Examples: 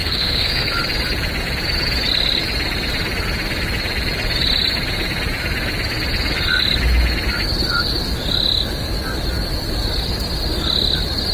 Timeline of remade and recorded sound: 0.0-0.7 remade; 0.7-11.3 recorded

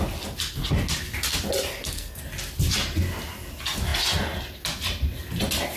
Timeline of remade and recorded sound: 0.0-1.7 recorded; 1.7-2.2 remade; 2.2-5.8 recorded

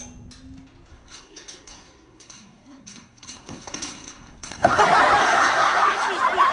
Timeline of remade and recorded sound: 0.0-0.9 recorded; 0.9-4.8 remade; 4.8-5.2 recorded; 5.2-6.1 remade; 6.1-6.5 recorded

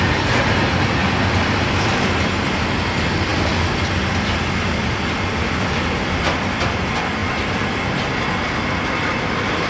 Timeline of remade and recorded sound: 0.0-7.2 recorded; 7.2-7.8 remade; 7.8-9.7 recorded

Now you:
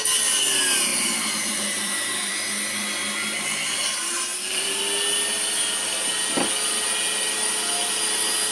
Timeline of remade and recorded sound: 0.0-0.9 recorded; 0.9-2.3 remade; 2.3-4.3 recorded; 4.3-4.8 remade; 4.8-8.5 recorded